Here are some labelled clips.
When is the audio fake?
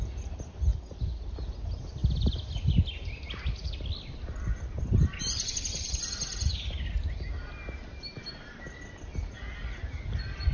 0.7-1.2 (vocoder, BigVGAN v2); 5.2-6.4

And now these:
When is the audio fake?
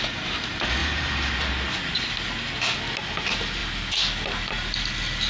0.8-1.5 (vocoder, BigVGAN v2)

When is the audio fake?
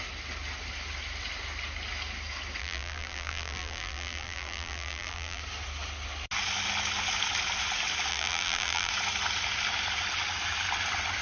2.6-5.4 (vocoder, BigVGAN v2); 8.1-8.9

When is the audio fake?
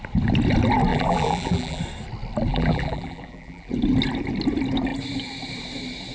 0.9-1.8 (vocoder, BigVGAN v2); 2.5-3.7